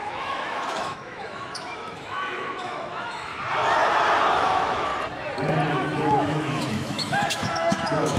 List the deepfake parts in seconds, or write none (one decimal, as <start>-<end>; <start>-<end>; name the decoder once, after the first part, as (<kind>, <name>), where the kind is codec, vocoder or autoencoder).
0.0-3.3 (autoencoder, DAC-VAE); 4.3-4.9; 5.7-8.2